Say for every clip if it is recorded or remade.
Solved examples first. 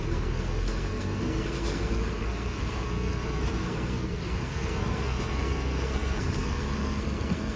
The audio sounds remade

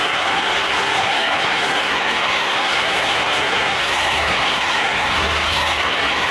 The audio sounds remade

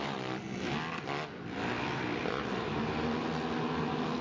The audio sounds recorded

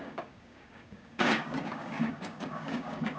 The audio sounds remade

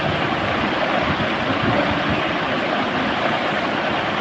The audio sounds recorded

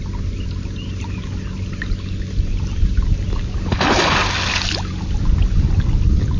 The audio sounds recorded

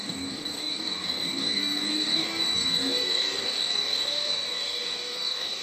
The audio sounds remade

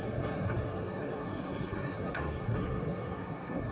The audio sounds remade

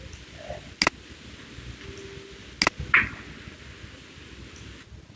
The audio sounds recorded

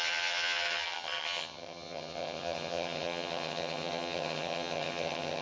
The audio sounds remade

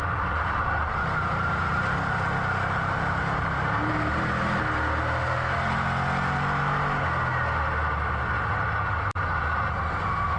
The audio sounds recorded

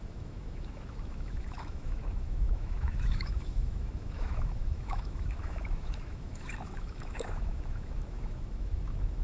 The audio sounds remade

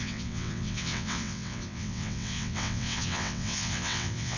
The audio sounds remade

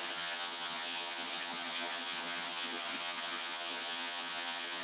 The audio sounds remade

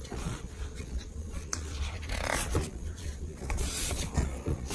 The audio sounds remade